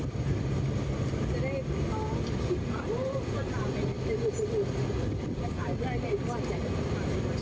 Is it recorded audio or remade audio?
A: recorded